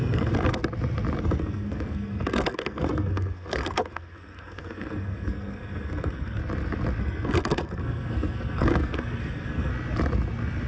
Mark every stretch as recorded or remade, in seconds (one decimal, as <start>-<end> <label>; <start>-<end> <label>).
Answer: 0.0-0.6 remade; 0.6-1.2 recorded; 1.2-6.4 remade; 6.4-7.0 recorded; 7.0-9.7 remade; 9.7-10.7 recorded